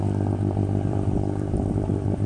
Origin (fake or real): fake